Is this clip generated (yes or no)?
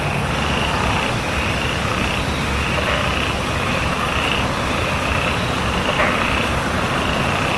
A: no